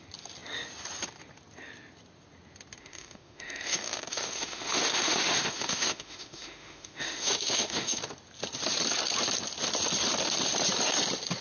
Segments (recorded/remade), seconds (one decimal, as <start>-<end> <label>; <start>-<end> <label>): 0.0-2.8 recorded; 2.8-8.0 remade; 8.0-11.4 recorded